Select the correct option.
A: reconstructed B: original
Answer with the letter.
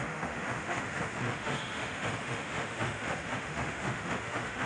A